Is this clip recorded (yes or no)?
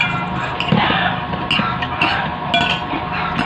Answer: yes